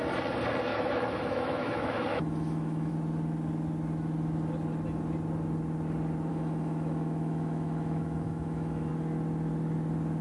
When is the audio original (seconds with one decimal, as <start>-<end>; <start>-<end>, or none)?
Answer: 0.0-0.7; 2.9-6.3; 8.9-10.2